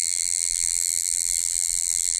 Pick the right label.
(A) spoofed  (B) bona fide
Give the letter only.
A